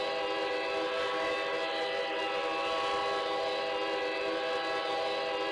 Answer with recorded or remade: recorded